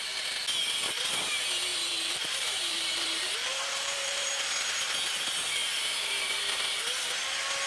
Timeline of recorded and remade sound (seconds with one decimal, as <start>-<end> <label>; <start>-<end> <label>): 0.0-1.7 recorded; 1.7-4.3 remade; 4.3-7.7 recorded